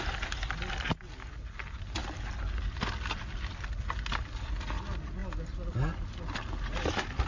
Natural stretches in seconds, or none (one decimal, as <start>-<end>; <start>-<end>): 0.0-7.3